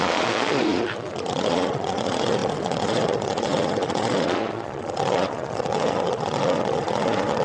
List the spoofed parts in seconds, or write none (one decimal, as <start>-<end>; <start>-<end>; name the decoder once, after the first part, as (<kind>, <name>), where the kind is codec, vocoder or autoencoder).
0.0-7.4 (vocoder, Vocos)